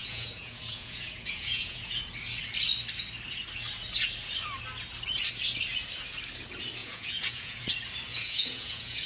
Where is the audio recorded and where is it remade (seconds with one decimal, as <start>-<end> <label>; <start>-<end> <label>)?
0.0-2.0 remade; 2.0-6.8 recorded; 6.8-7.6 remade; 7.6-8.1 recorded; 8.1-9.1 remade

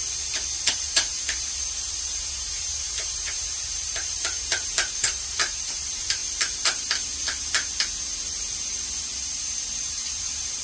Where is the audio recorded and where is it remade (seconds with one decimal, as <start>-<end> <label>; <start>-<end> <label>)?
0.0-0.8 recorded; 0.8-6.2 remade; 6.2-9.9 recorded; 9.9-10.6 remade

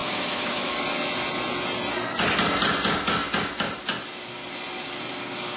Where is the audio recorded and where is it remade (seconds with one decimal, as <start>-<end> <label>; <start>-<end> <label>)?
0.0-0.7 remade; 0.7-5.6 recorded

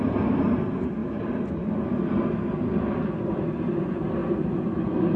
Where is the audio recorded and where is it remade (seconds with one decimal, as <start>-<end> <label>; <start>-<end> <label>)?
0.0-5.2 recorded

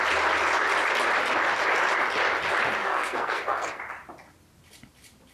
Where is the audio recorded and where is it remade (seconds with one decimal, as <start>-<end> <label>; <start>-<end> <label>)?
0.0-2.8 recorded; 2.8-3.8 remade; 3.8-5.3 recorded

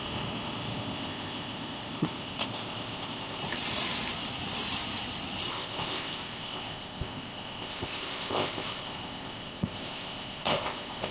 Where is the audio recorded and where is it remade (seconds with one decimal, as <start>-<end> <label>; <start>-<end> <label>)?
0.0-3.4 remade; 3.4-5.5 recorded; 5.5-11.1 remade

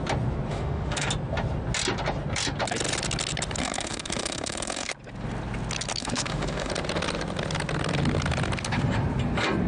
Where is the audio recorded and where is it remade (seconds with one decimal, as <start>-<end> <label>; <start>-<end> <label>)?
0.0-0.5 recorded; 0.5-1.1 remade; 1.1-3.6 recorded; 3.6-4.9 remade; 4.9-6.0 recorded; 6.0-6.7 remade; 6.7-9.7 recorded